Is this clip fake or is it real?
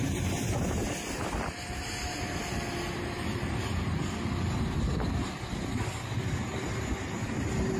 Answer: real